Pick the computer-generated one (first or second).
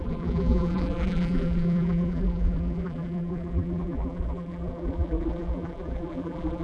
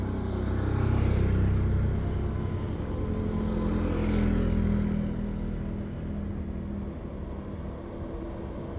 first